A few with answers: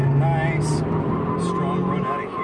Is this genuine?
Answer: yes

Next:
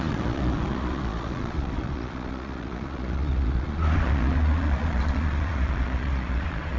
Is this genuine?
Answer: no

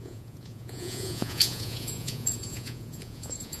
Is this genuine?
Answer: no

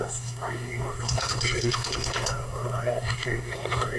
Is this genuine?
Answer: no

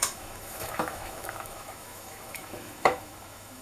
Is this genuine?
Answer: no